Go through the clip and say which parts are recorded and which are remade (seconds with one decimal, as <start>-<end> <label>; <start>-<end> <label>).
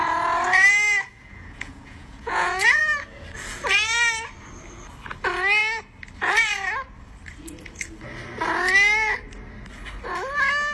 0.0-1.3 recorded; 1.3-2.8 remade; 2.8-10.7 recorded